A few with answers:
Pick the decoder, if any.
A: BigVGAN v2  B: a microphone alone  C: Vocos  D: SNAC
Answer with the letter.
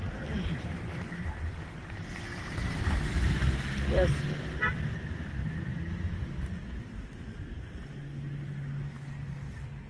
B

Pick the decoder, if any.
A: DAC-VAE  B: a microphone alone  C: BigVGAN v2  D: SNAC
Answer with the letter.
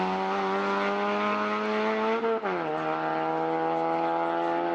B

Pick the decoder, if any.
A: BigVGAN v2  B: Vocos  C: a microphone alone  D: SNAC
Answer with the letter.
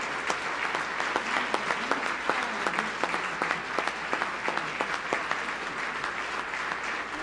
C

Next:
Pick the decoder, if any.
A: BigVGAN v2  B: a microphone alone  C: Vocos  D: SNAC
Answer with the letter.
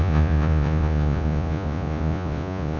C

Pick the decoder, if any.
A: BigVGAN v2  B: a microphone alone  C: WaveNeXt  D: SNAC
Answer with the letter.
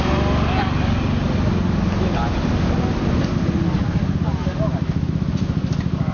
B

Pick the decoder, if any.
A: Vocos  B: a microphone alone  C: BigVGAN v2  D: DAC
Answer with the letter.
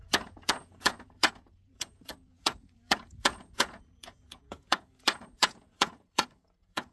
A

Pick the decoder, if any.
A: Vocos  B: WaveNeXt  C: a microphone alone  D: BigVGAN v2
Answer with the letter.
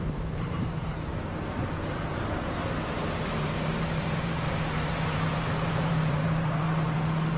D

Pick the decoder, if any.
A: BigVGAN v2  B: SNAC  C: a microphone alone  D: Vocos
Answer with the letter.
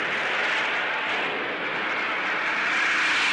C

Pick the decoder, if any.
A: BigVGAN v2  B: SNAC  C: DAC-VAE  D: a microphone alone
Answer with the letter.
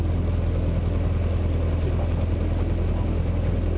D